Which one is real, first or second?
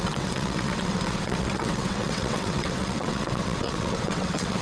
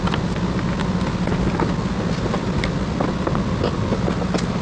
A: second